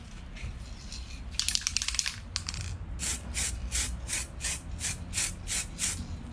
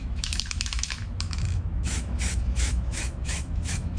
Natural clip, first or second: first